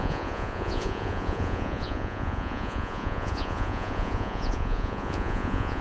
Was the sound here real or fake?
fake